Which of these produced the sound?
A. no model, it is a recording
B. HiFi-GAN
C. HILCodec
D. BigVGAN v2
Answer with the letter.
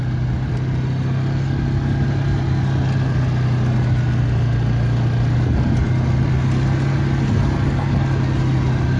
A